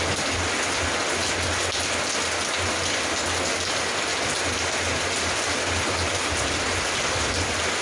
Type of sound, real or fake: real